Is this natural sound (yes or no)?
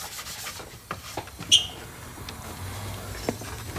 yes